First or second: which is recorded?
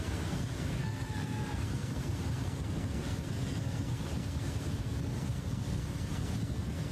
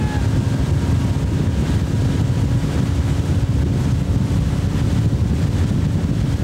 second